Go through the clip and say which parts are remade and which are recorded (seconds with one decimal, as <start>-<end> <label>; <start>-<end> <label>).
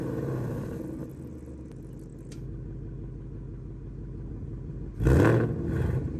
0.0-6.2 recorded